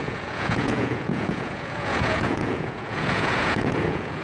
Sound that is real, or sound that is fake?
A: fake